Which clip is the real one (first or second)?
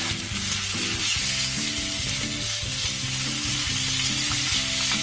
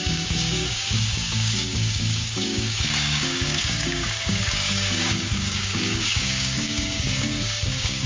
first